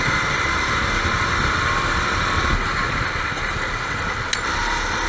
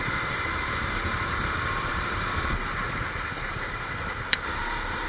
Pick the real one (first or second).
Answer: first